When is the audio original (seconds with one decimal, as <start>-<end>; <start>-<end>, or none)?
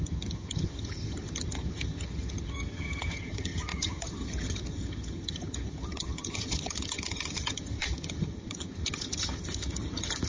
none